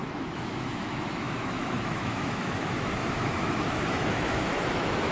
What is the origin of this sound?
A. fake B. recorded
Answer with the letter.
A